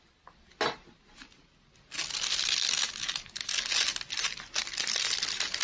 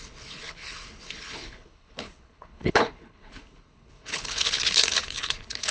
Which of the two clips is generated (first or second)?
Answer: second